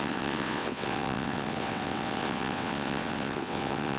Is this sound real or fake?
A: fake